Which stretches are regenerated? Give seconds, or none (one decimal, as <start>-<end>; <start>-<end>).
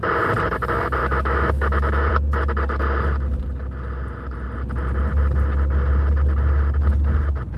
1.0-2.1